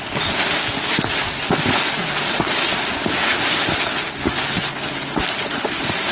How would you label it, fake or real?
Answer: real